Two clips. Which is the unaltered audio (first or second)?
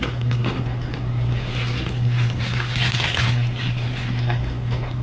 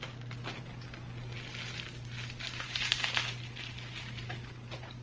second